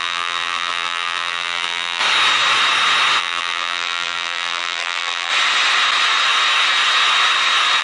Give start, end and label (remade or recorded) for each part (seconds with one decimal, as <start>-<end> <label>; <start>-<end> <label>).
0.0-2.0 remade; 2.0-3.2 recorded; 3.2-5.3 remade; 5.3-7.8 recorded